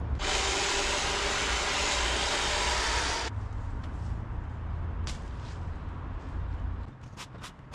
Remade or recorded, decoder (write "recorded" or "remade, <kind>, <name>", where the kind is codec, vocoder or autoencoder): recorded